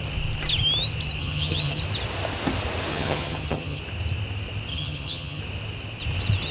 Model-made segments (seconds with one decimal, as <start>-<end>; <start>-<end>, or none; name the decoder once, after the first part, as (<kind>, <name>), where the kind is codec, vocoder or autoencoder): 1.2-1.8 (vocoder, HiFi-GAN); 2.9-3.8; 4.7-5.4